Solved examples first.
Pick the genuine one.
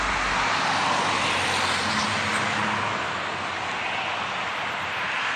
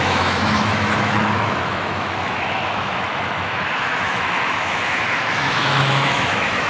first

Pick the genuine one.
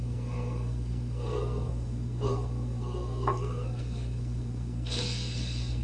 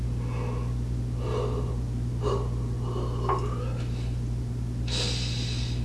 second